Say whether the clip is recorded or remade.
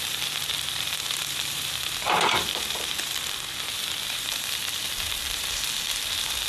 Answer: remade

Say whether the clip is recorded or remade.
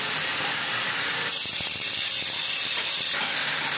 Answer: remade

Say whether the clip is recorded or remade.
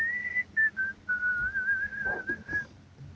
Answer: recorded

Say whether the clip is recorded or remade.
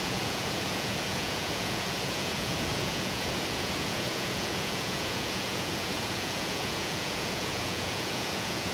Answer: remade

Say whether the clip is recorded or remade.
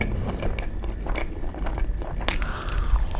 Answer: recorded